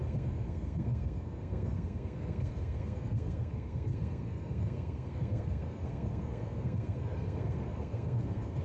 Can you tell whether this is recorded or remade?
remade